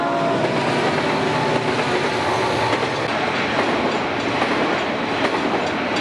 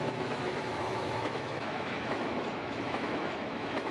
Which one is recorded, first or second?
first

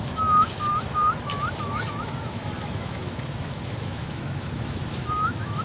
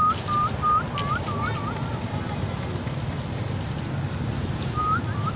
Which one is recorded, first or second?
second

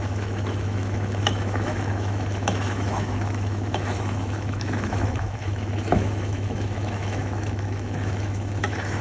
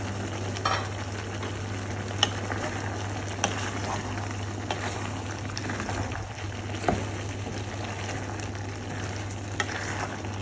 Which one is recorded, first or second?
second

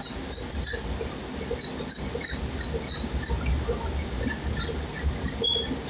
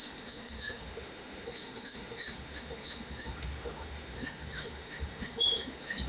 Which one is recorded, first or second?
first